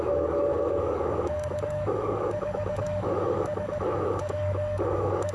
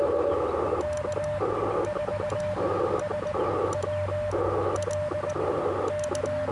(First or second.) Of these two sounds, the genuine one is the second